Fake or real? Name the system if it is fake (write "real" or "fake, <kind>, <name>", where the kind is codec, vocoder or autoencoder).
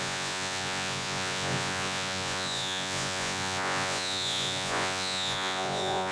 fake, vocoder, Vocos